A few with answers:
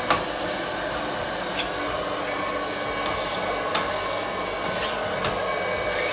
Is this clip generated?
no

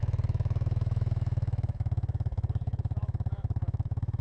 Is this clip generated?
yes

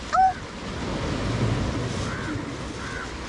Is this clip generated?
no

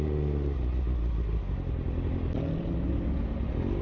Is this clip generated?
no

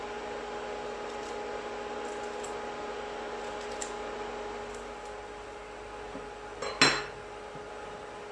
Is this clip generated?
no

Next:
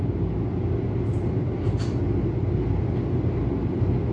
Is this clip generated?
no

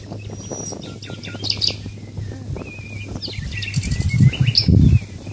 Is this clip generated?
no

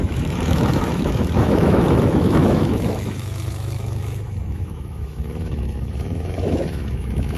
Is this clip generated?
yes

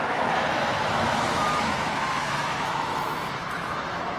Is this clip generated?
yes